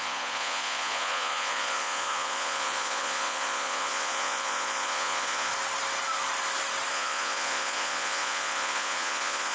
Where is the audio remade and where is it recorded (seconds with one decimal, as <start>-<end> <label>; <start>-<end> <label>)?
0.0-5.5 remade; 5.5-6.9 recorded; 6.9-9.5 remade